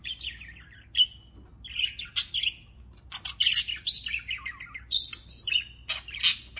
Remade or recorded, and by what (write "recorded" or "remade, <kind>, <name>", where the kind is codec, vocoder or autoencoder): recorded